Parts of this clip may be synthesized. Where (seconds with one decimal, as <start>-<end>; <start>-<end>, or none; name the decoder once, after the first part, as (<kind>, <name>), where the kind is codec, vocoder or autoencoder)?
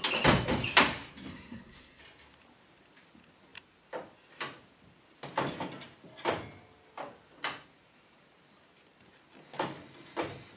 1.3-2.0 (codec, SNAC)